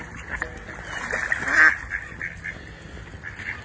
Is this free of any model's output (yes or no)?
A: yes